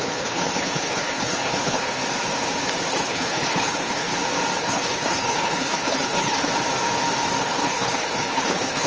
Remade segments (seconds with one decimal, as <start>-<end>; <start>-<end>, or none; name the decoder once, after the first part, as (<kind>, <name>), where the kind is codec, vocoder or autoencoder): 0.0-2.0 (codec, HILCodec); 2.9-4.1; 4.6-6.5; 7.4-8.9